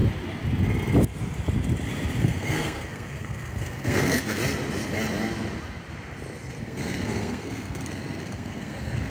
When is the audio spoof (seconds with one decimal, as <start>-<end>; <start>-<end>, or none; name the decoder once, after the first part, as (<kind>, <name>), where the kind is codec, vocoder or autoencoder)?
2.2-4.4 (codec, SNAC); 6.6-9.1